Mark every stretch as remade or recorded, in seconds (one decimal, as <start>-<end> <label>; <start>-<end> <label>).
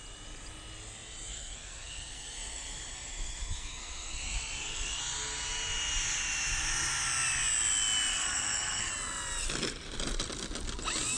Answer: 0.0-1.3 recorded; 1.3-5.0 remade; 5.0-8.1 recorded; 8.1-8.9 remade; 8.9-11.2 recorded